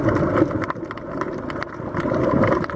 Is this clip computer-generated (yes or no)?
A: no